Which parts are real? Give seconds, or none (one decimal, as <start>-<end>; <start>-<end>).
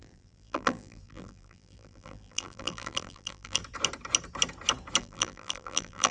3.6-5.0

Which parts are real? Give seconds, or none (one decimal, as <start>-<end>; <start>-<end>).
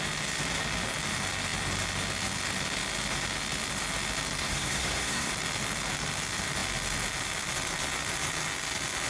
0.0-4.4; 5.3-9.1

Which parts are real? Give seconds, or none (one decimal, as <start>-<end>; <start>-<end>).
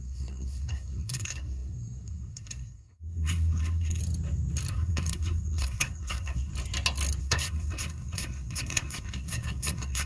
4.0-4.7; 6.5-7.2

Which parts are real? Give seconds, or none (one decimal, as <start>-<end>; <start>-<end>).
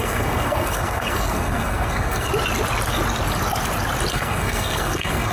2.3-4.1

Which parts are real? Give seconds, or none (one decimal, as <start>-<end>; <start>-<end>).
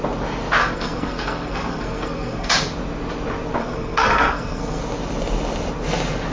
0.0-0.6; 2.5-3.6; 4.8-6.3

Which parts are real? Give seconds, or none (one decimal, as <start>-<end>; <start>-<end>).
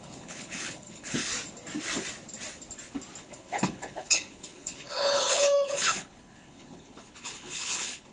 1.3-3.2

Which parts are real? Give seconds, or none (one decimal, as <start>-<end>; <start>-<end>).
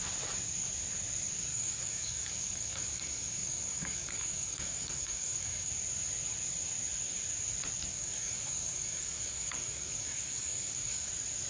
0.0-1.5; 5.7-7.9; 11.1-11.5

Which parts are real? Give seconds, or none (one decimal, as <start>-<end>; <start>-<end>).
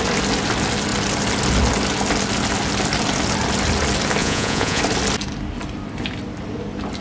0.0-4.2; 4.8-7.0